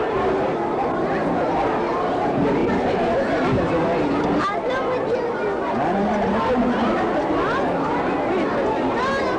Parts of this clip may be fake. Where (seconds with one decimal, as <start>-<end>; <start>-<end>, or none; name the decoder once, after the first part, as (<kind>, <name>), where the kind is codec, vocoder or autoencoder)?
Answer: none